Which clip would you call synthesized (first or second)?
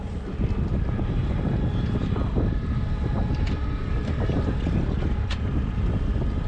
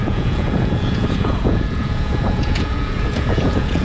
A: second